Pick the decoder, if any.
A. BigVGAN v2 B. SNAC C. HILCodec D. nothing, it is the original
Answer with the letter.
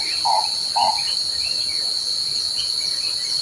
D